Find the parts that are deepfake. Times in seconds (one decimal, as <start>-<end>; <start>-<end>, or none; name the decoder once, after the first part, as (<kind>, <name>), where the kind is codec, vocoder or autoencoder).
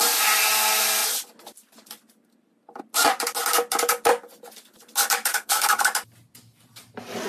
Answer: 5.3-5.8 (codec, SNAC)